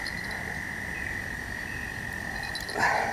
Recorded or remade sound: recorded